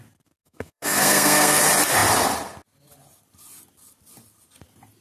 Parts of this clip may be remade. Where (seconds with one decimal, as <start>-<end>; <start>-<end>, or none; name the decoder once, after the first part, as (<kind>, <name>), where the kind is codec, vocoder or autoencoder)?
0.4-1.6 (codec, SNAC)